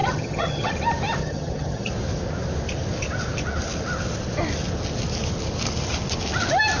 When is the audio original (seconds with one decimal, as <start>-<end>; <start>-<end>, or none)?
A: 0.7-1.2; 1.9-6.8